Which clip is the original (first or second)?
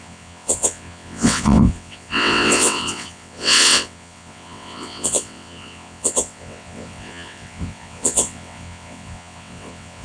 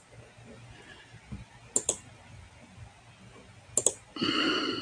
second